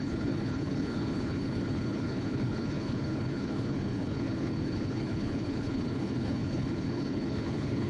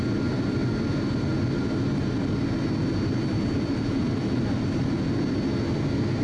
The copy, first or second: first